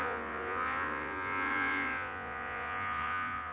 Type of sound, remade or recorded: remade